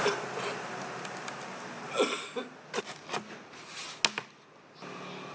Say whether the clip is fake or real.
real